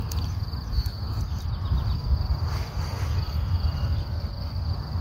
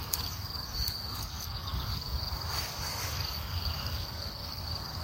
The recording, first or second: first